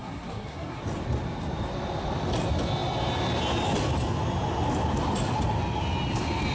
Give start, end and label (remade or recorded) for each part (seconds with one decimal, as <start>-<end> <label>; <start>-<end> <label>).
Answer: 0.0-0.8 remade; 0.8-6.5 recorded